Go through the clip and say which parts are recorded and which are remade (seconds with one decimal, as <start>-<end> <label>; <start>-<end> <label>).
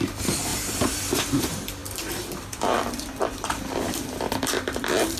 0.0-5.2 remade